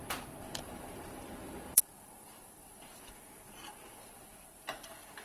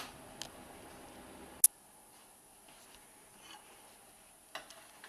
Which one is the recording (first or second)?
second